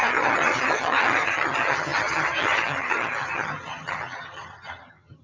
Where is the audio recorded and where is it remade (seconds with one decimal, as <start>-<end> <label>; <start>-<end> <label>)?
0.0-5.2 remade